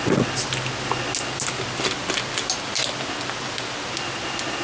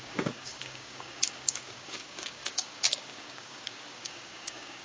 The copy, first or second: second